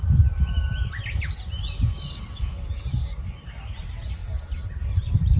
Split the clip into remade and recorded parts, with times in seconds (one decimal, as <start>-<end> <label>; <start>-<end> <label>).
0.0-5.4 recorded